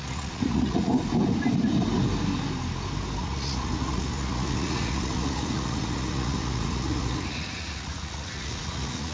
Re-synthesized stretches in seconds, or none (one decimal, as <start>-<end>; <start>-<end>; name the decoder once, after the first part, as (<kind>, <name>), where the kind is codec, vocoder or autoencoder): 0.0-0.9 (vocoder, Vocos); 3.2-9.1